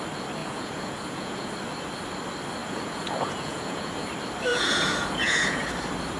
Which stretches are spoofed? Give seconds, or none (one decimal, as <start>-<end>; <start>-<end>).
0.4-1.5; 2.6-4.1; 4.5-5.7